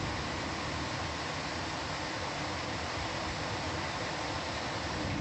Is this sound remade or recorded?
recorded